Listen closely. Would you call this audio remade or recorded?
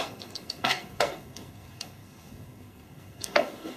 remade